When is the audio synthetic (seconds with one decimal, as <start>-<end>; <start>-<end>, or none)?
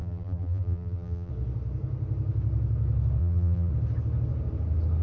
0.0-1.3; 3.2-3.7